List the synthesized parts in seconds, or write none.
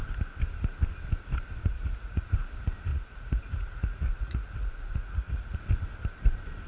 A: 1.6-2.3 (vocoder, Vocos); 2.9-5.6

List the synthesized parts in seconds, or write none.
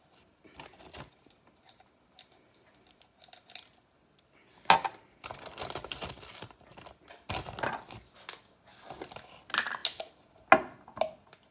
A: none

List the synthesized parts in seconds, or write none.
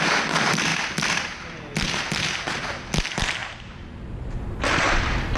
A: 3.4-5.4 (vocoder, BigVGAN v2)